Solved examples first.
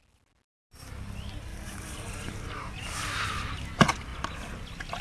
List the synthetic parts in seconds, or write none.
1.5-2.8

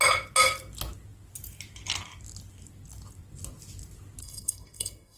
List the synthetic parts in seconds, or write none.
4.2-5.2

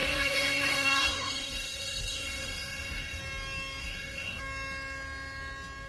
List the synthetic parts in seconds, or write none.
0.0-3.2; 3.8-4.4